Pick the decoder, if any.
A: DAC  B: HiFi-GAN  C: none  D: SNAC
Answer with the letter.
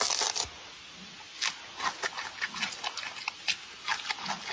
C